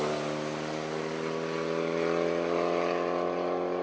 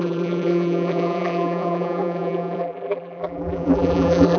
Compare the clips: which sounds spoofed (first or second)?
second